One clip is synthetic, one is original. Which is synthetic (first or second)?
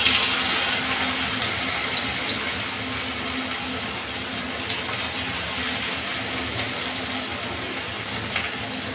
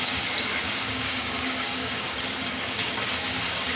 second